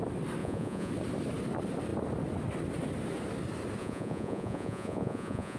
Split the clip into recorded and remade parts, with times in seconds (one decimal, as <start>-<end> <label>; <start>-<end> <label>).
0.0-0.4 recorded; 0.4-0.9 remade; 0.9-3.8 recorded; 3.8-5.6 remade